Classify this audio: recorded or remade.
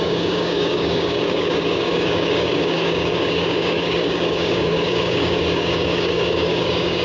remade